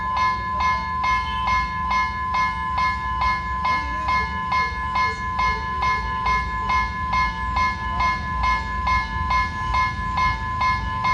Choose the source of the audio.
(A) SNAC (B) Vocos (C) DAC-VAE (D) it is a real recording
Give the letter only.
D